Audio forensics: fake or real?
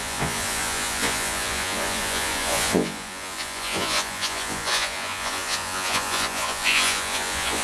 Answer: fake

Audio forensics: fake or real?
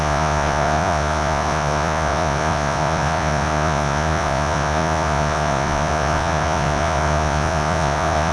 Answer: fake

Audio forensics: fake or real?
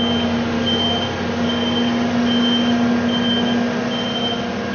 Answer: real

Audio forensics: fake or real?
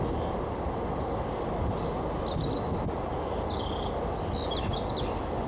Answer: real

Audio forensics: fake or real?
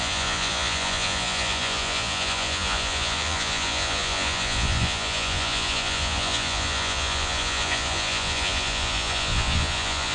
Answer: fake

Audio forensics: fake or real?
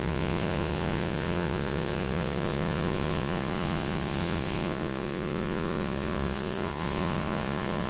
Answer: fake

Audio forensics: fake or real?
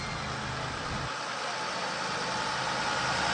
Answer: real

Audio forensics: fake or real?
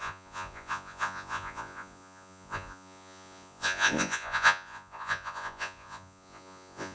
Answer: fake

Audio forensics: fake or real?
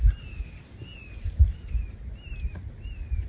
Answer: real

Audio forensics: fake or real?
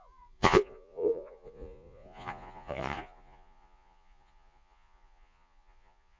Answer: fake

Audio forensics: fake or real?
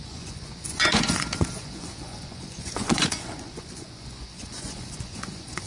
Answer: fake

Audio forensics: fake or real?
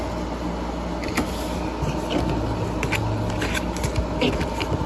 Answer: real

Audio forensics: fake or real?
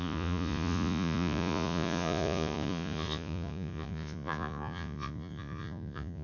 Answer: fake